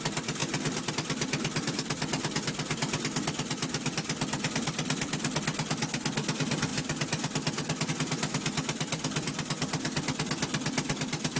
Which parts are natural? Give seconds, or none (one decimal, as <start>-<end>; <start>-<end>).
0.0-11.4